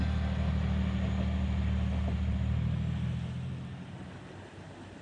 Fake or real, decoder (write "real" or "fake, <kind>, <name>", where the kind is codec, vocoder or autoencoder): real